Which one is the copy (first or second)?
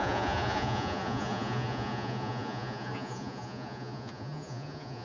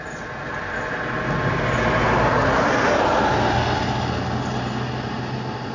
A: first